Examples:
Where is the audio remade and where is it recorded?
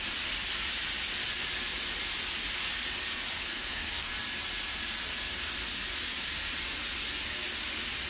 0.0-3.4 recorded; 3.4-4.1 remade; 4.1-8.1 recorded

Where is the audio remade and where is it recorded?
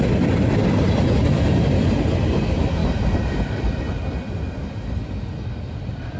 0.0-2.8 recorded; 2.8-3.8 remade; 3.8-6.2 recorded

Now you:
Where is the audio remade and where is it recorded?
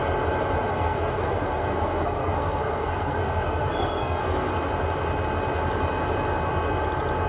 0.0-0.7 recorded; 0.7-4.2 remade; 4.2-7.3 recorded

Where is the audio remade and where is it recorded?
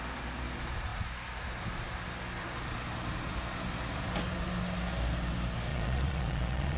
0.0-5.7 recorded; 5.7-6.8 remade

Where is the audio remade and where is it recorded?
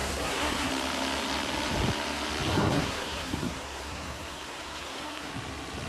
0.0-0.7 remade; 0.7-2.5 recorded; 2.5-5.3 remade; 5.3-5.9 recorded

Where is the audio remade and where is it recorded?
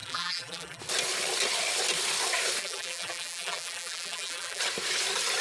0.0-0.8 remade; 0.8-2.6 recorded; 2.6-4.6 remade; 4.6-5.4 recorded